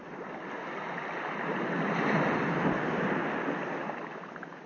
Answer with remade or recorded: recorded